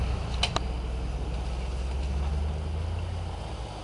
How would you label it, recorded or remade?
recorded